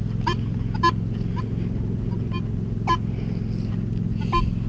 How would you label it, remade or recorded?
recorded